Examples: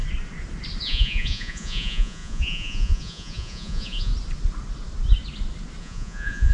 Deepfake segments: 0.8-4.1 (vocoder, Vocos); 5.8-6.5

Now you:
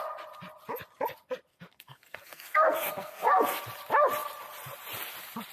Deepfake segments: 1.5-3.6 (codec, SNAC)

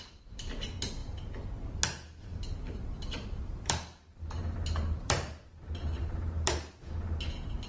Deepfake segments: 2.3-6.9 (vocoder, BigVGAN v2)